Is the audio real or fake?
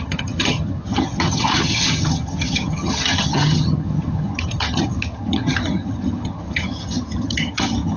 fake